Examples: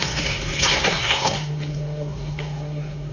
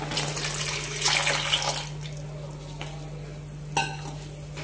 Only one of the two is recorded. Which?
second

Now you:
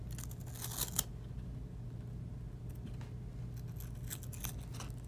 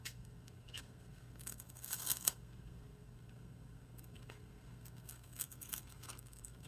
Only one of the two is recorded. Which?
first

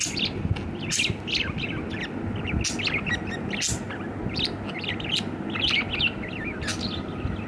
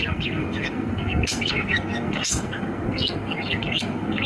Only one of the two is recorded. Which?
first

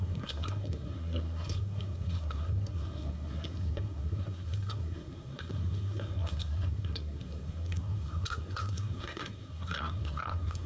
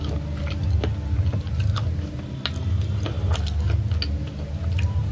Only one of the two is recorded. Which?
second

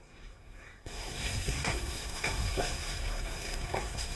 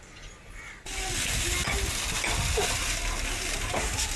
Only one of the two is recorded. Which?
second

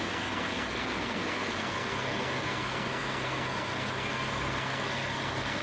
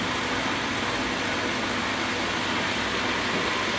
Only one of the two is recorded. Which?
second